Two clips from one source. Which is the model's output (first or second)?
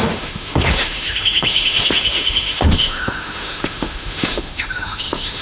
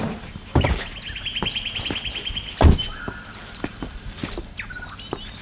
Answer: first